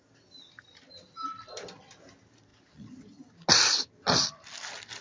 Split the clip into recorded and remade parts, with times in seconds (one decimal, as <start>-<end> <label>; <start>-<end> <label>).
0.0-5.0 recorded